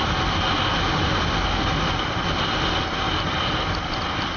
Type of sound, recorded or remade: recorded